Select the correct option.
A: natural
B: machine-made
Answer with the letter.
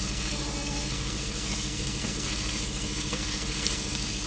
B